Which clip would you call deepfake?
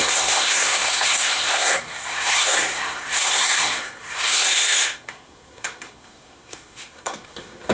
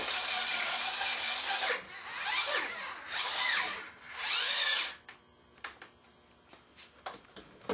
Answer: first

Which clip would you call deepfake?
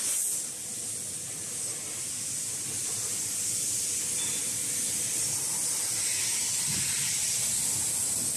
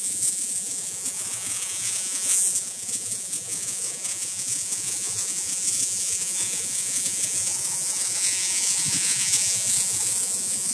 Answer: second